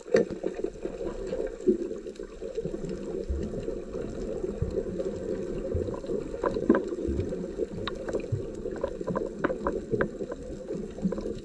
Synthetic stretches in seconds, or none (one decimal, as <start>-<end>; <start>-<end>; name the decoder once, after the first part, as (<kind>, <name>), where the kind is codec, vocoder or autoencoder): 6.6-7.2 (vocoder, WaveNeXt)

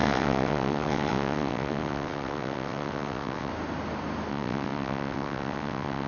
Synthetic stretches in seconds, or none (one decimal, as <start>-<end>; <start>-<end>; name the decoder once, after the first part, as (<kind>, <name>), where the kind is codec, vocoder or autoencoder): 0.0-3.5 (vocoder, WaveNeXt); 4.3-6.1

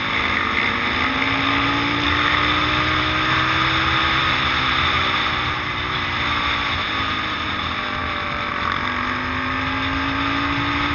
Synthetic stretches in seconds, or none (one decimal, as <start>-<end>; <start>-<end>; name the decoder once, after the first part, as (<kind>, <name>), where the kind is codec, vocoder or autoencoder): none

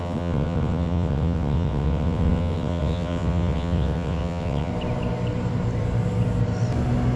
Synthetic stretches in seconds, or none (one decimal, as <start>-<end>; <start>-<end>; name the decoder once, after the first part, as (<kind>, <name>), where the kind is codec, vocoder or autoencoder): 0.0-4.7 (vocoder, WaveNeXt)